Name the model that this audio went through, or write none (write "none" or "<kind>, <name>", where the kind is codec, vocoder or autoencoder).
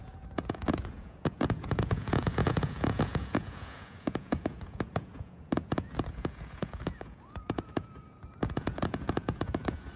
vocoder, Vocos